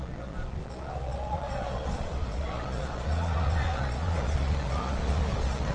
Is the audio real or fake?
fake